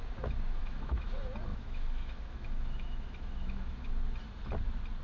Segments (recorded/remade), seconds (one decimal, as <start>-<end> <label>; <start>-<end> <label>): 0.0-0.6 recorded; 0.6-1.1 remade; 1.1-1.5 recorded; 1.5-3.9 remade; 3.9-5.0 recorded